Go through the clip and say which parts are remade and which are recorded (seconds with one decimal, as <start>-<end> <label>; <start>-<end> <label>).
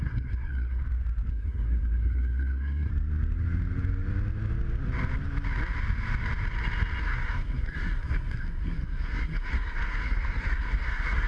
0.0-0.8 remade; 0.8-1.3 recorded; 1.3-2.9 remade; 2.9-7.0 recorded; 7.0-11.3 remade